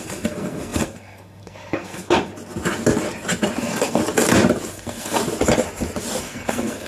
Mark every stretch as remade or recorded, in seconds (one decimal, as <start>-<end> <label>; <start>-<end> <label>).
0.0-2.3 remade; 2.3-3.6 recorded; 3.6-4.0 remade; 4.0-4.7 recorded; 4.7-5.2 remade; 5.2-6.2 recorded; 6.2-6.9 remade